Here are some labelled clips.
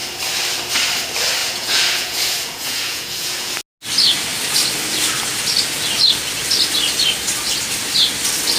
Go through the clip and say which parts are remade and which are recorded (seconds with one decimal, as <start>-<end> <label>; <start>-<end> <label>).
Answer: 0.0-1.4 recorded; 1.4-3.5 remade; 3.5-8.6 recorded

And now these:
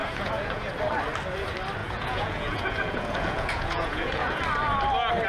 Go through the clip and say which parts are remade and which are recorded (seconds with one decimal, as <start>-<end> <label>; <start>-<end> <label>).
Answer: 0.0-0.7 remade; 0.7-1.8 recorded; 1.8-4.4 remade; 4.4-5.3 recorded

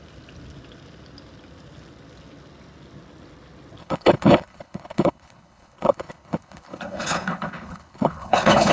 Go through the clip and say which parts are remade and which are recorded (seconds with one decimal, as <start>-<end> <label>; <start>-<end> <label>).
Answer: 0.0-3.8 recorded; 3.8-8.7 remade

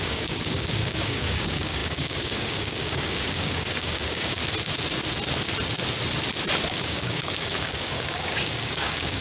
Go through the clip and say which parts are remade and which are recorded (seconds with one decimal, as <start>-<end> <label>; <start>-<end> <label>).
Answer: 0.0-4.4 remade; 4.4-6.7 recorded; 6.7-9.2 remade

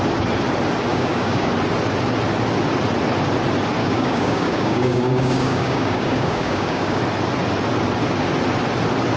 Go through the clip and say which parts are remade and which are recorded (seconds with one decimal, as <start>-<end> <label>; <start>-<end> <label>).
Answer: 0.0-0.9 recorded; 0.9-1.5 remade; 1.5-3.8 recorded; 3.8-7.0 remade; 7.0-9.2 recorded

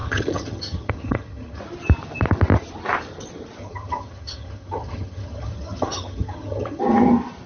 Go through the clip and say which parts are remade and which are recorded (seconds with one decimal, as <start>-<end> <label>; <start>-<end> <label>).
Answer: 0.0-1.6 remade; 1.6-3.6 recorded; 3.6-6.8 remade; 6.8-7.5 recorded

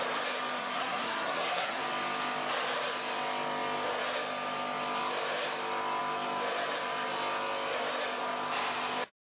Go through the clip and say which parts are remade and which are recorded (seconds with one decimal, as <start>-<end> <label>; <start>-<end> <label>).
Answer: 0.0-0.6 recorded; 0.6-1.8 remade; 1.8-9.3 recorded